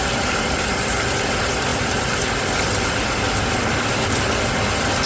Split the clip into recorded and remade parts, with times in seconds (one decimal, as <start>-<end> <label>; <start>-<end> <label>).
0.0-5.1 recorded